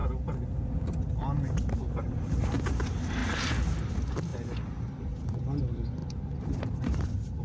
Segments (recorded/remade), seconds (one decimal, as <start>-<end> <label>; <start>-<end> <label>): 0.0-6.0 recorded; 6.0-7.4 remade

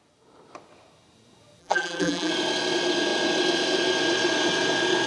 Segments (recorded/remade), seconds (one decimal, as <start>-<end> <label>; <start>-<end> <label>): 0.0-1.6 recorded; 1.6-2.3 remade; 2.3-5.1 recorded

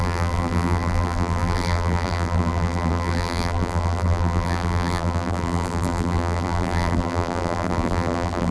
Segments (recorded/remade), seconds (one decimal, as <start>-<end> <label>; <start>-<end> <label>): 0.0-8.5 remade

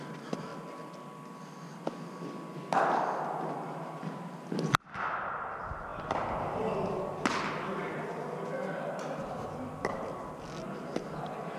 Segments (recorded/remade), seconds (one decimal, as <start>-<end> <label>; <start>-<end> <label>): 0.0-11.6 recorded